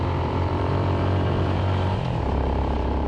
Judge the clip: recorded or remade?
remade